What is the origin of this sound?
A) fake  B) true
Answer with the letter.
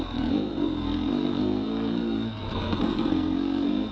A